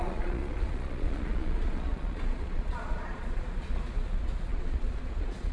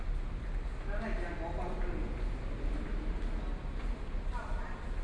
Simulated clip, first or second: first